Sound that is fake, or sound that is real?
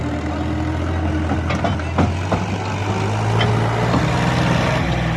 real